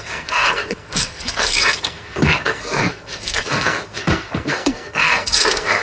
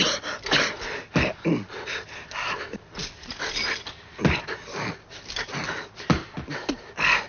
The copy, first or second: first